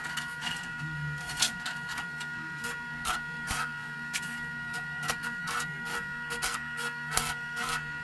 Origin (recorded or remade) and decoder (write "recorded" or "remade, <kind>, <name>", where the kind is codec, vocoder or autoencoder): remade, codec, SNAC